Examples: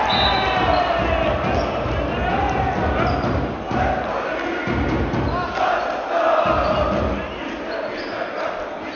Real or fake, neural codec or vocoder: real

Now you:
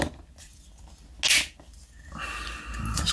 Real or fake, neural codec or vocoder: real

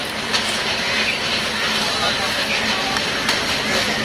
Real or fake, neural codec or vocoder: real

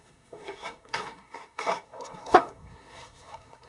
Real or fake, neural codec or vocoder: fake, codec, SNAC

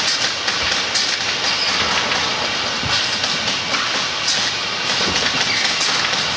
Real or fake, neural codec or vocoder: real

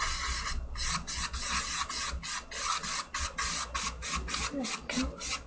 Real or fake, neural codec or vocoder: real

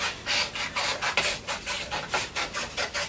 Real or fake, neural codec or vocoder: fake, vocoder, BigVGAN v2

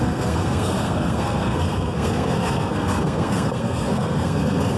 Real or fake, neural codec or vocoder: fake, codec, SNAC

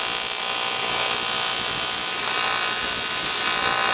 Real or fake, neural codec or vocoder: real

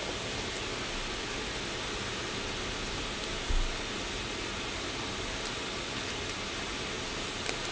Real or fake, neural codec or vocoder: real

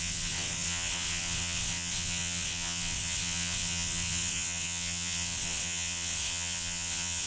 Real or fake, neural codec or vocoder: fake, vocoder, WaveNeXt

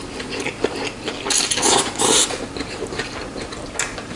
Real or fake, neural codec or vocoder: real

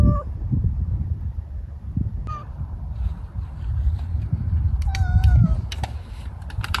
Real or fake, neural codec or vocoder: fake, vocoder, BigVGAN v2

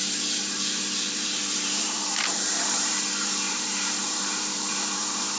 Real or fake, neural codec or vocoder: fake, vocoder, BigVGAN v2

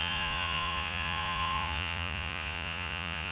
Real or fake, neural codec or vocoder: fake, vocoder, Vocos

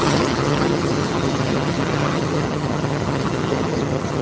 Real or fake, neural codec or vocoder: fake, vocoder, HiFi-GAN